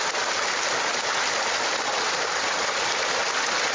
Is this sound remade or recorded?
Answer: recorded